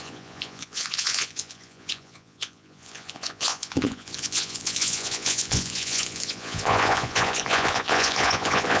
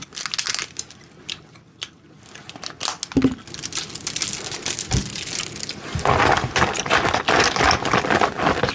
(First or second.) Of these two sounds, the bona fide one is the second